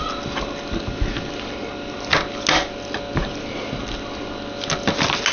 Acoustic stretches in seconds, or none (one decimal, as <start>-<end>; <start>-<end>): 0.0-5.3